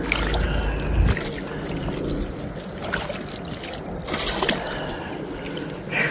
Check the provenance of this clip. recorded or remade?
recorded